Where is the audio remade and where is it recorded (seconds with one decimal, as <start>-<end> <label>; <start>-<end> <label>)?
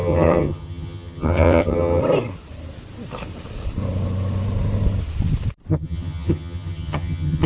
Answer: 0.0-2.0 remade; 2.0-5.7 recorded; 5.7-7.5 remade